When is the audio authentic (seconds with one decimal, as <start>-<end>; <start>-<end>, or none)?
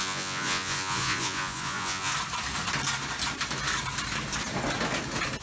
2.1-5.4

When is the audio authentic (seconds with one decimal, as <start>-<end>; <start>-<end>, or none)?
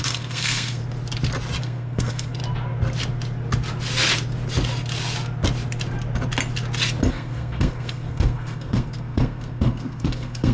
0.8-1.6; 2.4-7.1